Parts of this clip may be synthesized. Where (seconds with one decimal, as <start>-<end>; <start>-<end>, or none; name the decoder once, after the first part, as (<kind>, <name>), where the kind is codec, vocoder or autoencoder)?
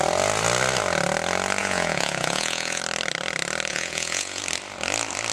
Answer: 1.6-2.8 (vocoder, Vocos); 3.7-4.4